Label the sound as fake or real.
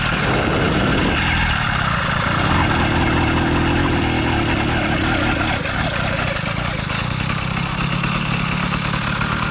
real